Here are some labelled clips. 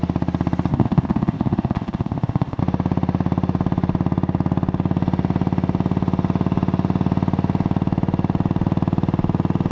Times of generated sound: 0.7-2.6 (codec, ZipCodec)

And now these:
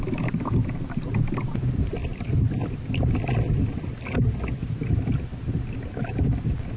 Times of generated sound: none

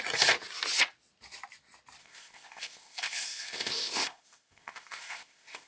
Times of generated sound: 2.0-5.7 (codec, ZipCodec)

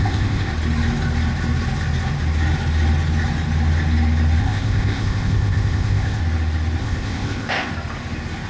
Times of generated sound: 0.0-0.5 (codec, ZipCodec); 4.4-6.2; 6.8-7.7

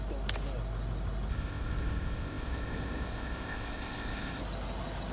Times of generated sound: 1.3-4.4 (codec, ZipCodec)

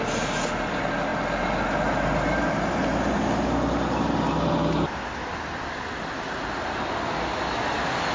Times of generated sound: none

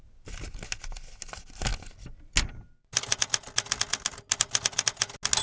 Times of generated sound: none

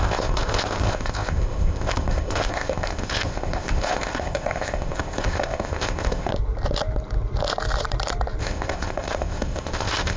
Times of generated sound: 0.0-6.3 (codec, ZipCodec); 8.4-10.2